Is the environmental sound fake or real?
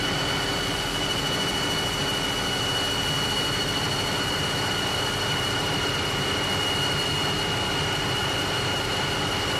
real